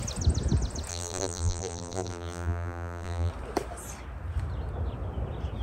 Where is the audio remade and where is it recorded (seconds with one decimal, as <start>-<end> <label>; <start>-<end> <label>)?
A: 0.0-0.9 recorded; 0.9-3.3 remade; 3.3-5.6 recorded